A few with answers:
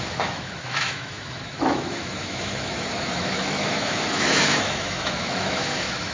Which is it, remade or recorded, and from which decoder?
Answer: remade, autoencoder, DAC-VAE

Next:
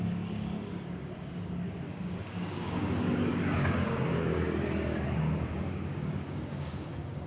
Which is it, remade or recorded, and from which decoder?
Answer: remade, codec, DAC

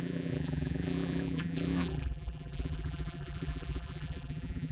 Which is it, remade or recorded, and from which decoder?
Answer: remade, vocoder, BigVGAN v2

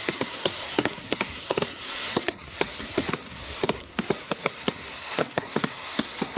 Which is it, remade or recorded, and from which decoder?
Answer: remade, codec, SNAC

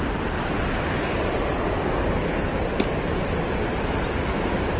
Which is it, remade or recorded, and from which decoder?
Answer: recorded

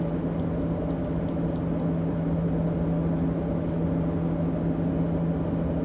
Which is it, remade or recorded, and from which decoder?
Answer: recorded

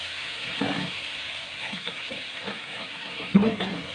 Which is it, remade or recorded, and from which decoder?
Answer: remade, codec, SNAC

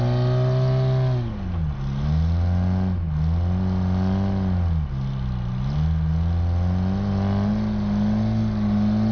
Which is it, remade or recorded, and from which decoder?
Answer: recorded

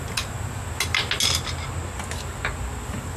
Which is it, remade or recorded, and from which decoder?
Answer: recorded